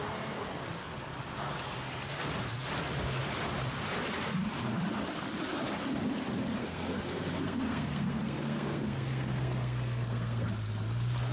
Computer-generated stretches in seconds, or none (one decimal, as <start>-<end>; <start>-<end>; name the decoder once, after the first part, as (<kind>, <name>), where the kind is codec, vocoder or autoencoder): 6.6-10.5 (codec, SNAC)